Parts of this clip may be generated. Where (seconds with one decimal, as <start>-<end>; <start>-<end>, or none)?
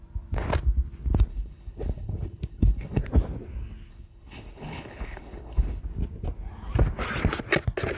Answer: 1.3-3.0; 3.9-5.8